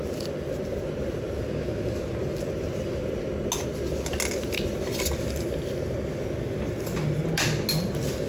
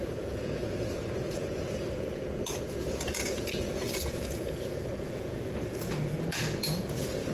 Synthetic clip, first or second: second